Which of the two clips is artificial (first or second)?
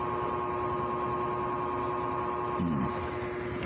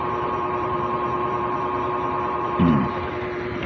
second